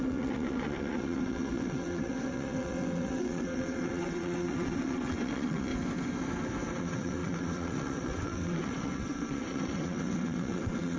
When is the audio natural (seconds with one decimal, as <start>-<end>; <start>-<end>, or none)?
5.7-6.8